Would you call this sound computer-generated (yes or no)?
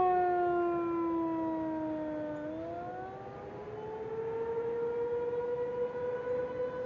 no